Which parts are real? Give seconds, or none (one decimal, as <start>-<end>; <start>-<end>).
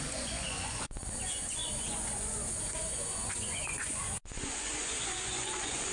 none